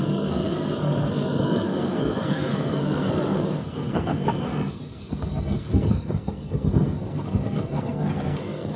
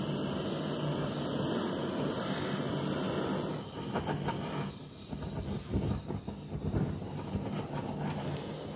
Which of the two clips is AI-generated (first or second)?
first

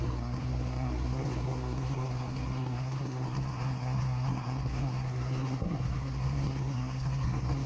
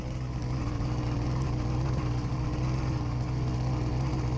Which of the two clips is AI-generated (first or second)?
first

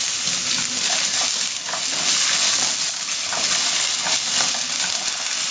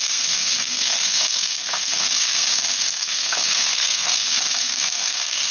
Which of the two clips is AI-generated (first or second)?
second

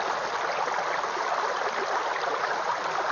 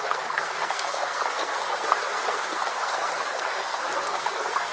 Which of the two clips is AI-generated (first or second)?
second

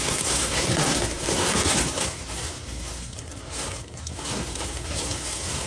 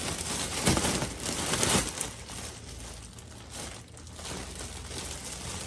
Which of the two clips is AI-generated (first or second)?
first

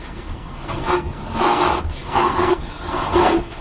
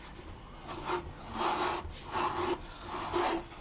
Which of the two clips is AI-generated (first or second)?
first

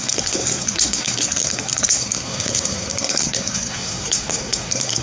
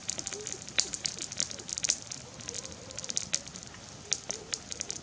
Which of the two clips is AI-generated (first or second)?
first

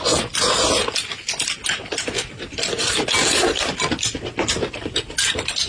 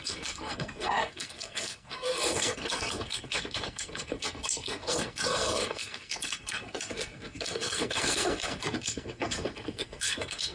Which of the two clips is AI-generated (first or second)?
second